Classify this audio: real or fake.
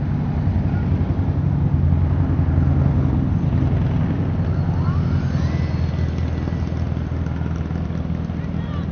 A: real